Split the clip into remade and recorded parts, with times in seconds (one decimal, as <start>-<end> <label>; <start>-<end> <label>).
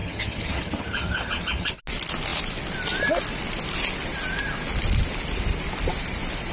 0.0-1.7 remade; 1.7-6.5 recorded